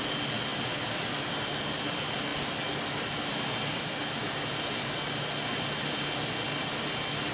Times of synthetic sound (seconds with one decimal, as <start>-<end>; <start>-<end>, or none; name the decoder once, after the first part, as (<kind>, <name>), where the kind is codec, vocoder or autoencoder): none